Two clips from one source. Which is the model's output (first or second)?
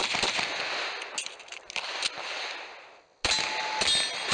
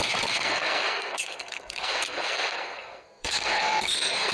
second